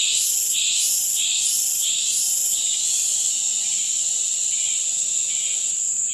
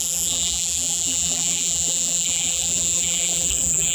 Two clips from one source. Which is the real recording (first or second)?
first